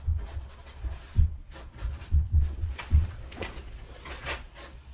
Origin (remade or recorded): remade